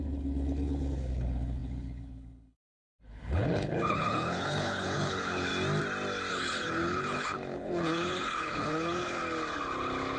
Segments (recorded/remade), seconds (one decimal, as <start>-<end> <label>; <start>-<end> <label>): 0.0-5.5 remade; 5.5-6.3 recorded; 6.3-9.2 remade; 9.2-10.2 recorded